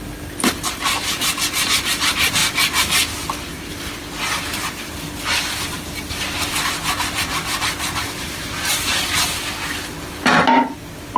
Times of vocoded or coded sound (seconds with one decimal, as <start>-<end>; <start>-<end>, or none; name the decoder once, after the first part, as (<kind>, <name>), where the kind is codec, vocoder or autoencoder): 0.0-2.4 (vocoder, BigVGAN v2); 4.4-8.9